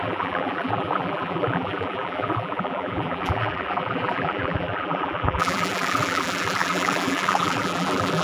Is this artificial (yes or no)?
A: yes